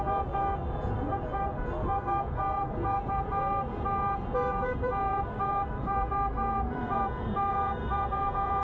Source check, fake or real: fake